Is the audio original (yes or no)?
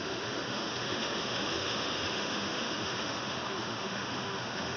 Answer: no